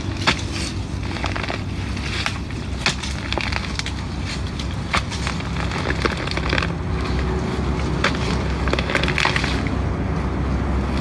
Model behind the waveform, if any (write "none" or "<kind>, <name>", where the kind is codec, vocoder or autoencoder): none